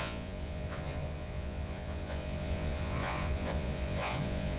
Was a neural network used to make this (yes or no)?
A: yes